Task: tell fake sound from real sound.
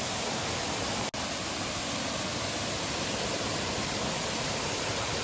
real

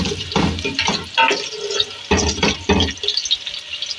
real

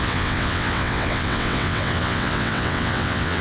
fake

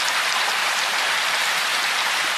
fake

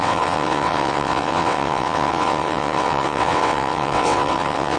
fake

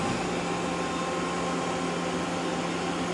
real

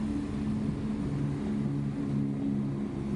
real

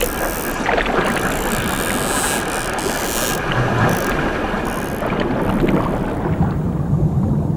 real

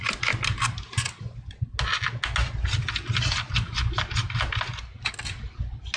real